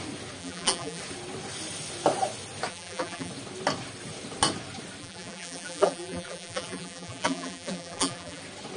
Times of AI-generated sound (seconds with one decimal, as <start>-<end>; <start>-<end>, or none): 0.4-1.0; 2.7-3.3; 5.0-8.4